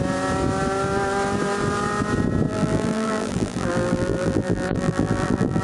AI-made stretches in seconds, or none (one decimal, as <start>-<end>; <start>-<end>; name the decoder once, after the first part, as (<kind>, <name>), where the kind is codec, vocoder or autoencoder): 2.5-5.6 (vocoder, BigVGAN v2)